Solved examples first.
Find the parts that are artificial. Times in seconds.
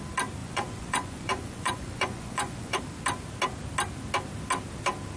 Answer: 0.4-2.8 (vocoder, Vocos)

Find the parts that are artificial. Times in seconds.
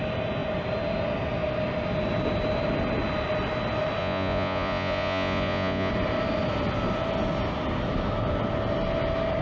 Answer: 4.0-5.9 (vocoder, Vocos)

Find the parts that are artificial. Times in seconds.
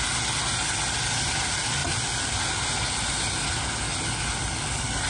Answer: none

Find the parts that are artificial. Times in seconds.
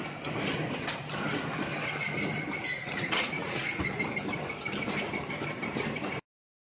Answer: 2.7-4.0 (vocoder, Vocos)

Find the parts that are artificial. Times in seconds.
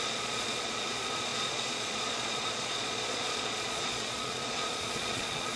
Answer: 0.0-5.6 (vocoder, Vocos)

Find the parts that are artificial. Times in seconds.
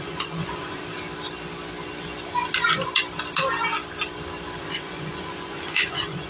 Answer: 0.0-0.8 (vocoder, Vocos); 4.6-6.3